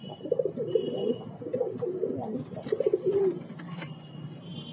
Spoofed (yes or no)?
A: no